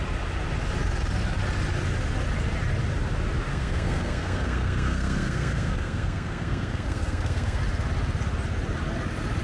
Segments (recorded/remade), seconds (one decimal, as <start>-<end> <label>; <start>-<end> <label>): 0.0-3.5 recorded; 3.5-7.6 remade; 7.6-9.4 recorded